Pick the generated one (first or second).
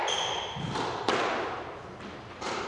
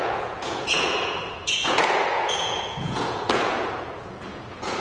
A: second